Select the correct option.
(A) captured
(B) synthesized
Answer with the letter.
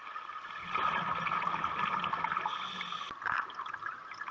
A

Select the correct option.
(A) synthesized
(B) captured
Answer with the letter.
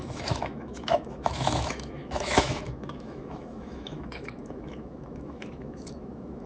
A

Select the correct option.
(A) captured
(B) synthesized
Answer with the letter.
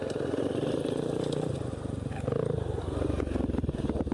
A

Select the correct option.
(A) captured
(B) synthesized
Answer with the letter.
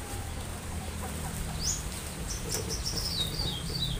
B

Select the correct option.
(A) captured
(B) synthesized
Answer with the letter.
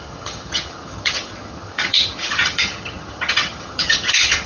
B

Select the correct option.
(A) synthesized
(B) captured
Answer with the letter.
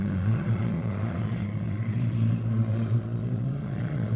A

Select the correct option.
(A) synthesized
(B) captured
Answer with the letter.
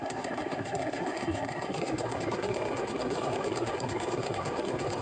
A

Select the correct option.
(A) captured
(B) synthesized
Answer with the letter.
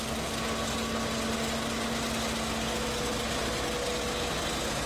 A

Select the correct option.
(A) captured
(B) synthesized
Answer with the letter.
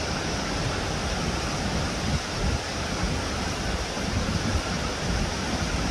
A